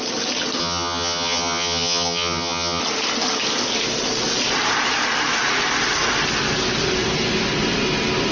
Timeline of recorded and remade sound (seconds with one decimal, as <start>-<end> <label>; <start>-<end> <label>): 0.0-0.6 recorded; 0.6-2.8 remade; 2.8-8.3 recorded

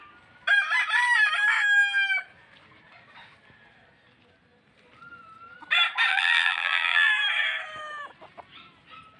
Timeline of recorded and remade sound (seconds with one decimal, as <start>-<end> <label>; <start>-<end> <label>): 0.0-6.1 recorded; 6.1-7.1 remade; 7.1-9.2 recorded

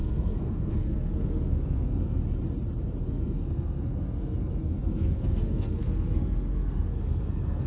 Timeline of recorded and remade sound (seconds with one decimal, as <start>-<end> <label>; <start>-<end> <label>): 0.0-2.2 remade; 2.2-3.0 recorded; 3.0-7.7 remade

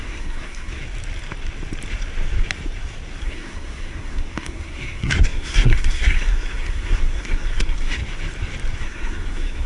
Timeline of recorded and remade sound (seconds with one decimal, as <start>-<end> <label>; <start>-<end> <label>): 0.0-0.8 remade; 0.8-3.2 recorded; 3.2-8.0 remade; 8.0-8.8 recorded; 8.8-9.7 remade

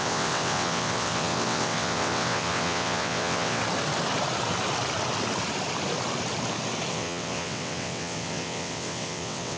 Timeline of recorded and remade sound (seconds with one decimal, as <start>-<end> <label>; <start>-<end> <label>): 0.0-3.6 remade; 3.6-6.9 recorded; 6.9-9.6 remade